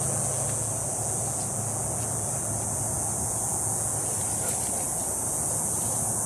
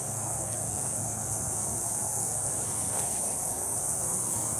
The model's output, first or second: second